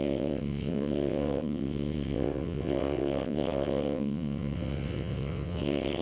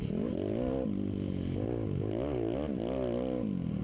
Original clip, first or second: second